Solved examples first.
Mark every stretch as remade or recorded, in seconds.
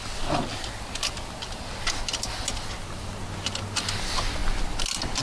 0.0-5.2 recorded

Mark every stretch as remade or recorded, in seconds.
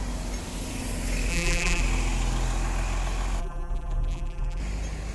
0.0-1.3 recorded; 1.3-1.8 remade; 1.8-3.4 recorded; 3.4-4.6 remade; 4.6-5.1 recorded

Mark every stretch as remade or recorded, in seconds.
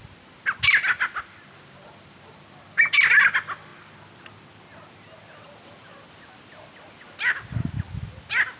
0.0-8.6 recorded